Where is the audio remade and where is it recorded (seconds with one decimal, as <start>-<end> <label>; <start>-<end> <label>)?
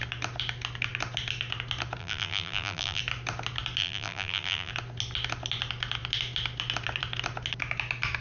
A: 0.0-2.0 recorded; 2.0-3.0 remade; 3.0-3.8 recorded; 3.8-4.7 remade; 4.7-8.2 recorded